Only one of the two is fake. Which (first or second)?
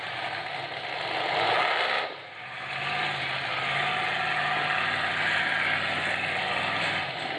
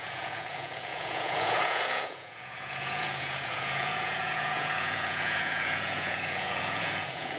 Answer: second